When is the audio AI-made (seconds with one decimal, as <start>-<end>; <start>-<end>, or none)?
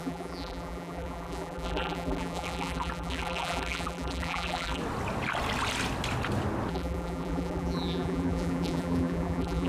0.0-4.8; 6.7-9.7